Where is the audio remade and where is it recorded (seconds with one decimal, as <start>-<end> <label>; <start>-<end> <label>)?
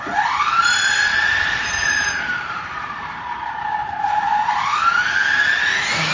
0.0-1.1 recorded; 1.1-4.8 remade; 4.8-6.1 recorded